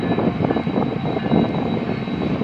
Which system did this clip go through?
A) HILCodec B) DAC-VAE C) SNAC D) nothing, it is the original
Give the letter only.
D